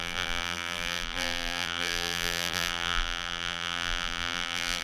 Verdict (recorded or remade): remade